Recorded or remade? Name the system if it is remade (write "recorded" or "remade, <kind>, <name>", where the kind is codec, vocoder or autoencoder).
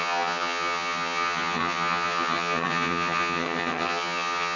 remade, vocoder, HiFi-GAN